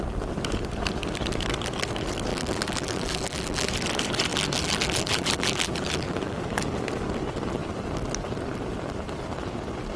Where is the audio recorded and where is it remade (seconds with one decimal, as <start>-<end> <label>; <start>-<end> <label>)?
0.0-2.3 recorded; 2.3-3.7 remade; 3.7-4.3 recorded; 4.3-6.4 remade; 6.4-10.0 recorded